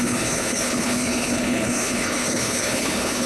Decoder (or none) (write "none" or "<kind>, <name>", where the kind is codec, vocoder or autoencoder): codec, HILCodec